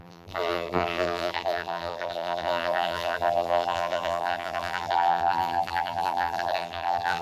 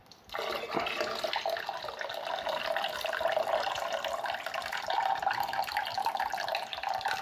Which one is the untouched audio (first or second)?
second